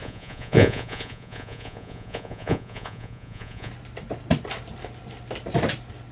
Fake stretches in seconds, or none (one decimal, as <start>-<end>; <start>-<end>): 0.0-3.7